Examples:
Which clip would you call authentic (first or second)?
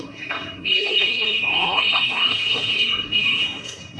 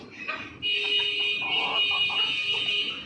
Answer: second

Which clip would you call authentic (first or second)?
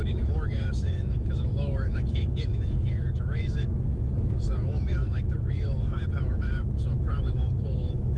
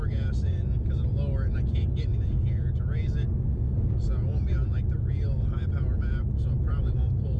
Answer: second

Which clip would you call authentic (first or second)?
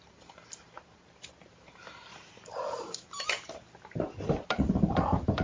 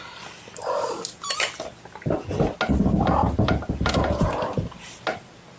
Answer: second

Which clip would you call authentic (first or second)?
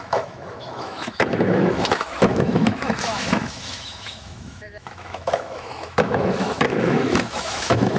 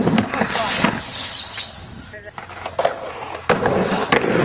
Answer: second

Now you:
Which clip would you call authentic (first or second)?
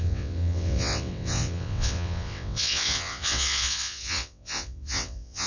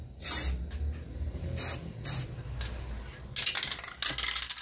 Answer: second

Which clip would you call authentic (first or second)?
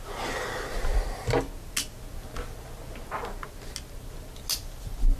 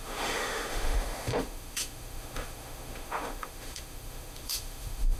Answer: first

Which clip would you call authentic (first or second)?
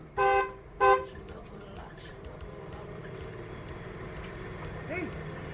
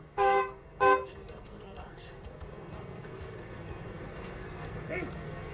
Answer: first